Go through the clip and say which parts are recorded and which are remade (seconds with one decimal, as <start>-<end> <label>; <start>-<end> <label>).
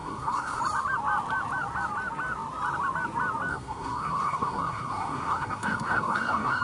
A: 0.0-0.6 remade; 0.6-3.5 recorded; 3.5-6.6 remade